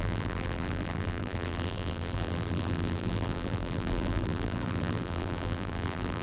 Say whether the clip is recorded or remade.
remade